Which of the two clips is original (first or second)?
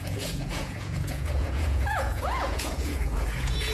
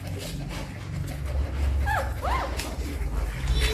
second